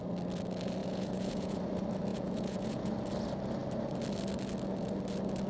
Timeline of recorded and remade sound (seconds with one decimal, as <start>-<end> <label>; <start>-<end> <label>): 0.0-0.8 recorded; 0.8-1.6 remade; 1.6-2.1 recorded; 2.1-2.9 remade; 2.9-5.5 recorded